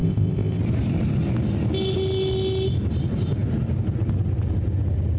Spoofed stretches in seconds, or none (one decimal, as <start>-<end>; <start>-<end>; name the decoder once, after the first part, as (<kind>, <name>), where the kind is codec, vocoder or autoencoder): 0.0-0.6 (codec, ZipCodec)